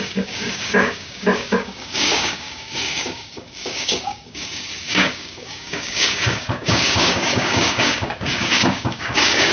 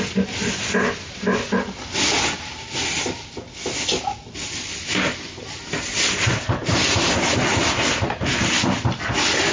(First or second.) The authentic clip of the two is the second